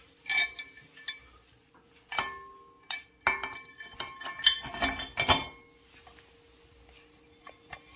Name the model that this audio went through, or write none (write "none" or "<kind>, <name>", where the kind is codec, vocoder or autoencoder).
none